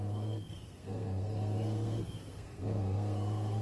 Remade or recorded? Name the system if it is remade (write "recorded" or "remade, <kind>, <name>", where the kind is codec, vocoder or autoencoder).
remade, codec, SNAC